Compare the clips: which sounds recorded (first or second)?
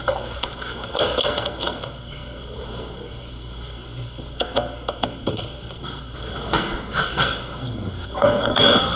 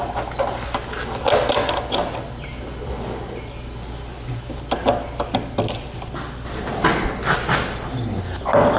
second